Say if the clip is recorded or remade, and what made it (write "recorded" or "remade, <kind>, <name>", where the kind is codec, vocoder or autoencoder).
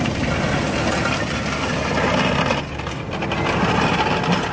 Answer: recorded